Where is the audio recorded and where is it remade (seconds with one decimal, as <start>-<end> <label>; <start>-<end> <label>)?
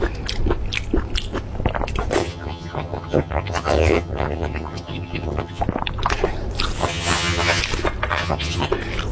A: 0.0-2.2 recorded; 2.2-5.6 remade; 5.6-6.8 recorded; 6.8-7.6 remade; 7.6-8.1 recorded; 8.1-8.7 remade; 8.7-9.1 recorded